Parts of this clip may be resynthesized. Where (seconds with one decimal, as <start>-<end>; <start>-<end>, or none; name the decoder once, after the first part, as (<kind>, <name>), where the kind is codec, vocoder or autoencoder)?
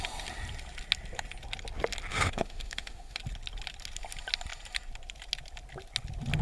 2.1-3.2 (autoencoder, DAC-VAE)